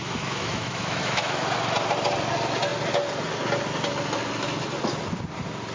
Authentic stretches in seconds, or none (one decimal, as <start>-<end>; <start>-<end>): 1.3-5.7

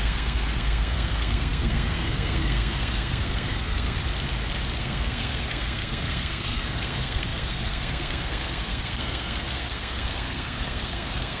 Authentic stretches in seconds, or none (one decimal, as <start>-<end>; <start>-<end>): 4.0-4.8

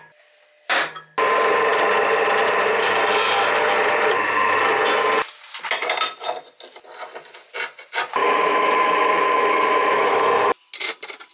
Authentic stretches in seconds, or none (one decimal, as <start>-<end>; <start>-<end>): 0.0-8.2; 10.5-11.3

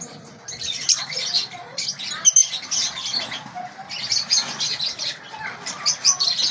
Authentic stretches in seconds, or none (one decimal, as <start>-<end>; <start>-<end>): 0.0-6.5

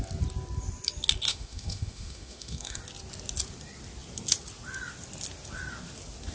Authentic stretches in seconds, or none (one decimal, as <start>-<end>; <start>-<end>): 0.0-1.3; 2.8-6.3

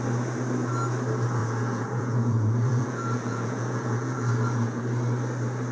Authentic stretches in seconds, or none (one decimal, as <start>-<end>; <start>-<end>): 0.0-1.4; 4.8-5.7